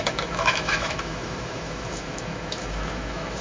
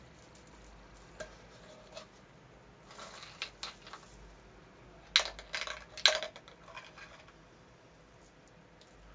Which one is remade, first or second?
first